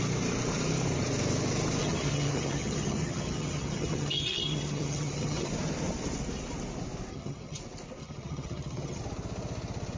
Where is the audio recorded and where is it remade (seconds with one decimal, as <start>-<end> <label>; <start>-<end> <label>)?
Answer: 0.0-1.8 recorded; 1.8-5.5 remade; 5.5-7.1 recorded; 7.1-7.6 remade; 7.6-8.0 recorded; 8.0-9.0 remade; 9.0-10.0 recorded